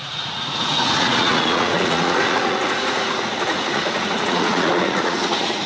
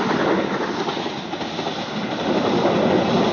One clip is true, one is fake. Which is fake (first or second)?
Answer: first